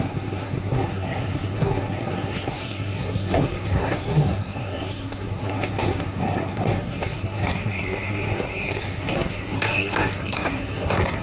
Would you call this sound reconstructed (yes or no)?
yes